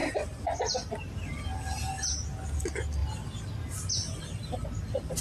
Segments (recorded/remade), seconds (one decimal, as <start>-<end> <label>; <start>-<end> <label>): 0.0-1.9 remade; 1.9-5.2 recorded